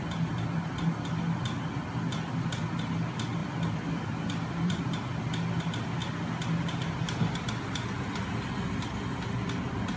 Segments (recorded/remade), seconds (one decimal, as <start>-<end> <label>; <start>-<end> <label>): 0.0-3.4 recorded; 3.4-4.8 remade; 4.8-10.0 recorded